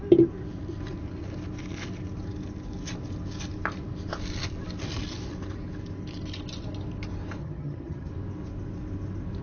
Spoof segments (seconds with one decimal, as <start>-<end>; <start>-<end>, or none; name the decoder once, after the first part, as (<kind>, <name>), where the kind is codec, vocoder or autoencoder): 7.4-8.1 (vocoder, HiFi-GAN)